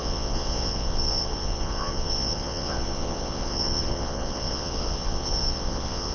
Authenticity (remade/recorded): remade